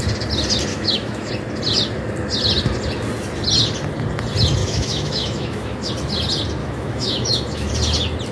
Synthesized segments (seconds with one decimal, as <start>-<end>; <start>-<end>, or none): 0.7-1.3; 4.6-5.9; 6.6-7.7